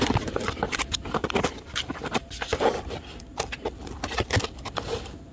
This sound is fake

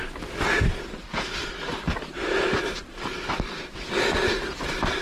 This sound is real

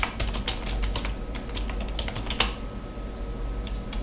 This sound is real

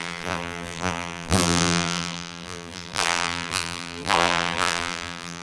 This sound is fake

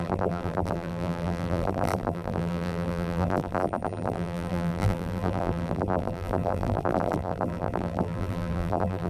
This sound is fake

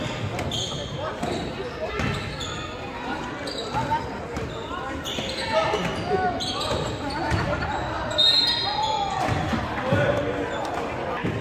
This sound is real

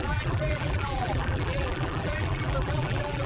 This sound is fake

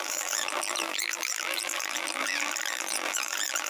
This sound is fake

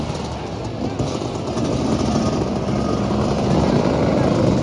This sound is real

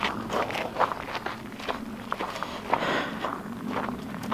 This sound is real